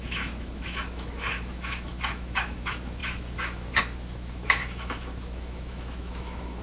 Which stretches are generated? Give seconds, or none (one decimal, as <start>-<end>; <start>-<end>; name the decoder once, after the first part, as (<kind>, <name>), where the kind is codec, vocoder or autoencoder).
0.0-6.6 (autoencoder, DAC-VAE)